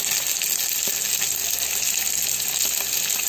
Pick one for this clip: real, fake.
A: real